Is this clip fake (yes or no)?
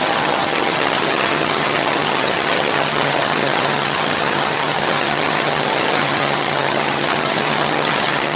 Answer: yes